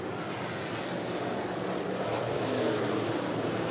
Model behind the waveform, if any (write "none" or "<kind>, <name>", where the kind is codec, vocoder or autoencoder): none